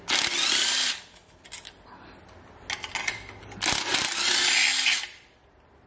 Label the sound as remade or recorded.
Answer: recorded